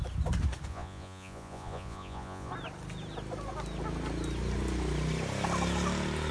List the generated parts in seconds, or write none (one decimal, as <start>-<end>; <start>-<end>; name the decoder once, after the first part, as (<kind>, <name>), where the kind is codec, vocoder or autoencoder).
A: 0.7-2.5 (vocoder, Vocos)